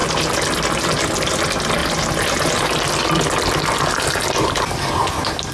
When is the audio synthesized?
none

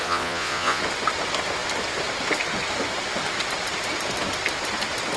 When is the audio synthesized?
0.0-0.8 (vocoder, Vocos)

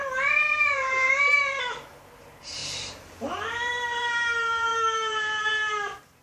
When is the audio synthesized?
0.0-6.2 (vocoder, BigVGAN v2)